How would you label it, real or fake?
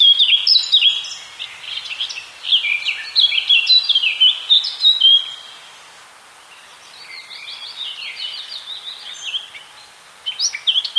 real